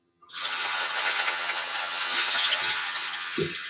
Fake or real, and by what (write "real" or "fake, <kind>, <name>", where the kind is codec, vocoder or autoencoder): fake, vocoder, HiFi-GAN